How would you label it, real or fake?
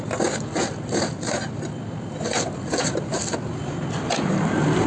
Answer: real